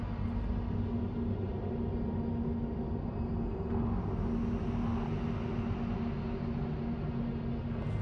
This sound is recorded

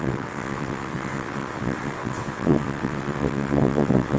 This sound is remade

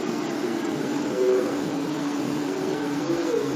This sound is remade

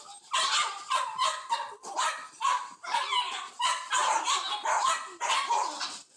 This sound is recorded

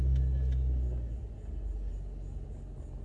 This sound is recorded